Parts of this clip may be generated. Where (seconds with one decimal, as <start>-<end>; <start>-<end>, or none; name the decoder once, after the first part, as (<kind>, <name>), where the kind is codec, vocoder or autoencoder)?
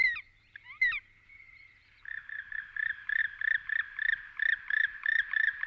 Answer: 0.0-3.2 (vocoder, BigVGAN v2); 4.6-5.7